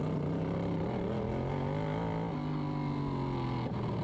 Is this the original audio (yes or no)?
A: yes